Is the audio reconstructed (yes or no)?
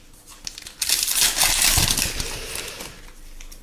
no